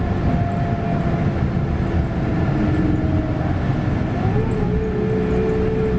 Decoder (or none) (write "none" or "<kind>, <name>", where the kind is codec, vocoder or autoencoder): none